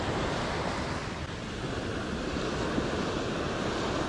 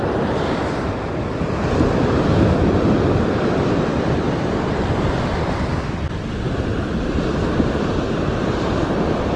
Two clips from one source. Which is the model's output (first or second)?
second